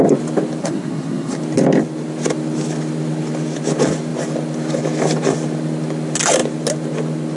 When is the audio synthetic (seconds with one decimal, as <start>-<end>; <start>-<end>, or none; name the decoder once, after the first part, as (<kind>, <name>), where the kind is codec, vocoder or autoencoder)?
0.6-1.4 (codec, SNAC)